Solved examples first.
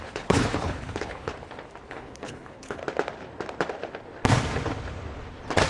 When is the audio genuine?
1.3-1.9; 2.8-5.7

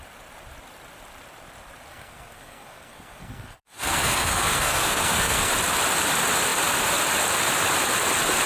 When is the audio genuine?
0.0-1.9; 5.5-8.5

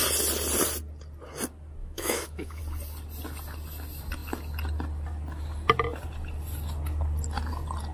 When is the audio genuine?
0.0-1.8; 2.6-7.9

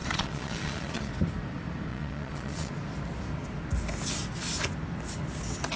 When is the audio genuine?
1.1-1.9; 2.7-5.8